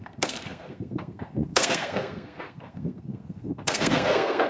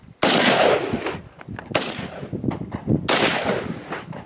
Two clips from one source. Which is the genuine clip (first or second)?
second